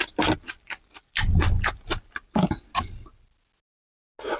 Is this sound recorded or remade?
recorded